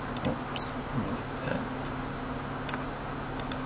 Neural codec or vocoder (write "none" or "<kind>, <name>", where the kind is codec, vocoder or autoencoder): none